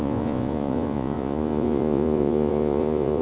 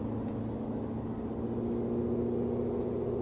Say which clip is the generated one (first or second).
first